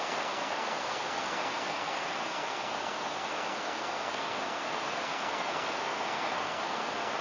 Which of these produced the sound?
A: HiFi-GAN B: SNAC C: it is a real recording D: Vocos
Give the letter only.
B